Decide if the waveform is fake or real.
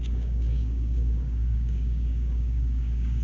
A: fake